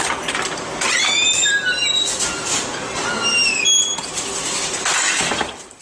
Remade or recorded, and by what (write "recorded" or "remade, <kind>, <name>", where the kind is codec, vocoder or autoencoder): remade, vocoder, BigVGAN v2